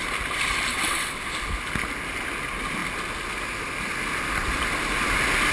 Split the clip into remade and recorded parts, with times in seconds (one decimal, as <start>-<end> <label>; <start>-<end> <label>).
0.0-0.7 recorded; 0.7-1.3 remade; 1.3-5.5 recorded